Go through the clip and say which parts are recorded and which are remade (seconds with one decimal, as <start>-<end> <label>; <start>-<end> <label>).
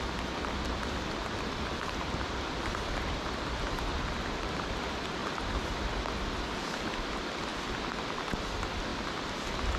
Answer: 0.0-5.2 remade; 5.2-7.1 recorded; 7.1-7.5 remade; 7.5-8.3 recorded; 8.3-8.9 remade; 8.9-9.8 recorded